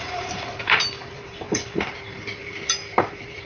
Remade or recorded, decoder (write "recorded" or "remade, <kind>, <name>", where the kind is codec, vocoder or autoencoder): remade, vocoder, BigVGAN v2